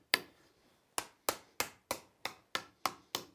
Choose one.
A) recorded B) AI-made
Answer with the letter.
A